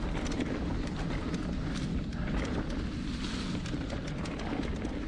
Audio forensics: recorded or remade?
recorded